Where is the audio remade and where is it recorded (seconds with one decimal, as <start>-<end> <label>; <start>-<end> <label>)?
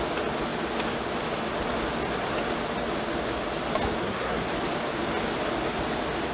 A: 0.0-4.0 recorded; 4.0-4.5 remade; 4.5-6.3 recorded